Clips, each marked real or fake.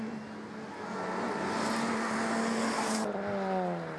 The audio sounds real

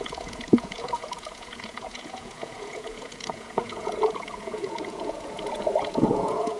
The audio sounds fake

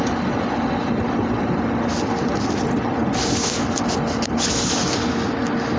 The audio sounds real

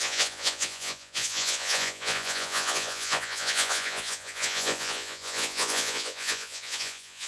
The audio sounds fake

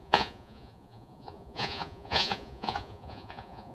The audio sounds fake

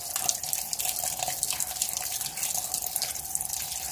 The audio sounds real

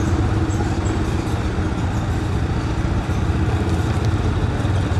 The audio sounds real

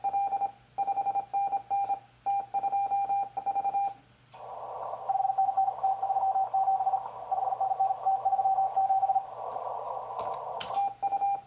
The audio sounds real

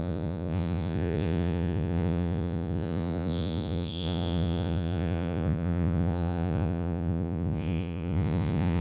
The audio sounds fake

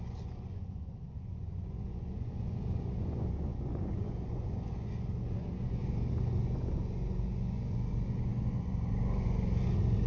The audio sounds fake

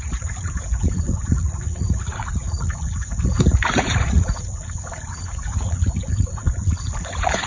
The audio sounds fake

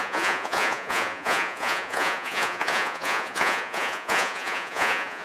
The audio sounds fake